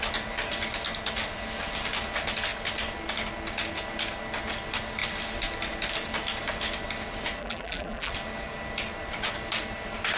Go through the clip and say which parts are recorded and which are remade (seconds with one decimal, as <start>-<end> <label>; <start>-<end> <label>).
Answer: 0.0-7.4 recorded; 7.4-8.1 remade; 8.1-10.2 recorded